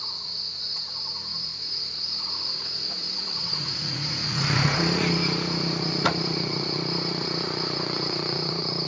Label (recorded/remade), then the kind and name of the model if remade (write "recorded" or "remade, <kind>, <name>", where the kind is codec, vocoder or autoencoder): remade, vocoder, Vocos